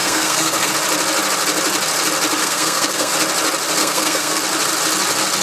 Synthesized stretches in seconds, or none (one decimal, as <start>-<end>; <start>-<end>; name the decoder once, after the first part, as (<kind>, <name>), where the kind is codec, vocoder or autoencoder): 0.0-0.7 (codec, SNAC); 2.4-3.1; 3.8-4.4